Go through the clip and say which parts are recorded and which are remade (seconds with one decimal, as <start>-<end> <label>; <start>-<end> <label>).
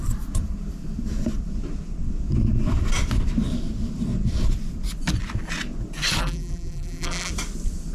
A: 0.0-6.2 recorded; 6.2-7.3 remade; 7.3-7.9 recorded